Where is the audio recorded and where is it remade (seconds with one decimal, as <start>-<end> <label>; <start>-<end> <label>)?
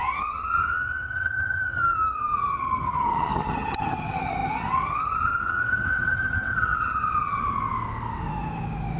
0.0-7.4 remade; 7.4-9.0 recorded